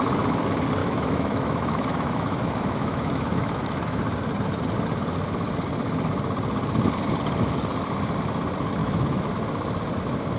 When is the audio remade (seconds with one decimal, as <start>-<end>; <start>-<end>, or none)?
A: 0.8-4.0; 8.8-9.3